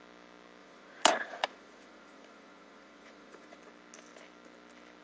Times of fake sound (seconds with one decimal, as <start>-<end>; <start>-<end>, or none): 0.6-3.6